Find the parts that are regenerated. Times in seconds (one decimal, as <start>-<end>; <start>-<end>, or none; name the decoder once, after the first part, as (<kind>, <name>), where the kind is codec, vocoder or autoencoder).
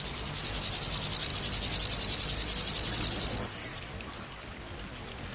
none